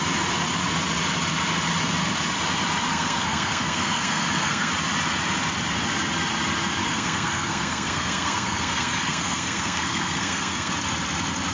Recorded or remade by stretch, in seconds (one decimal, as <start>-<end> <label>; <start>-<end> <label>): 0.0-2.9 recorded; 2.9-4.7 remade; 4.7-6.8 recorded; 6.8-10.7 remade; 10.7-11.5 recorded

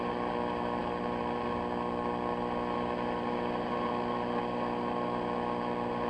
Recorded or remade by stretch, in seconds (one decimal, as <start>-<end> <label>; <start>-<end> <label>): 0.0-6.1 recorded

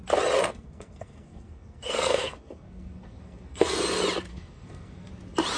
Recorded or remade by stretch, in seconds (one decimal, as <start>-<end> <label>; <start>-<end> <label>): 0.0-0.4 recorded; 0.4-3.8 remade; 3.8-4.3 recorded; 4.3-5.1 remade; 5.1-5.6 recorded